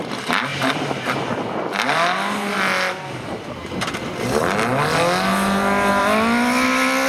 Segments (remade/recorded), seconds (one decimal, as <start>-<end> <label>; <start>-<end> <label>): 0.0-7.1 recorded